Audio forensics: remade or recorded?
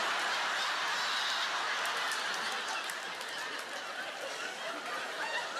recorded